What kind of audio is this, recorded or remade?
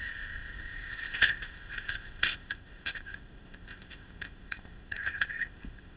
remade